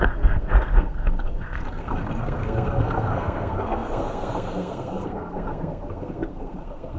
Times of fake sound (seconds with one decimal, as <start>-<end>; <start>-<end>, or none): 0.0-7.0